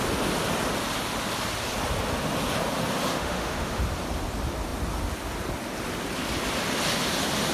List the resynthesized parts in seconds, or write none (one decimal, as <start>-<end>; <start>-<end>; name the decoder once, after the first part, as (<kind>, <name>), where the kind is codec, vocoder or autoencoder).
3.1-3.8 (autoencoder, DAC-VAE)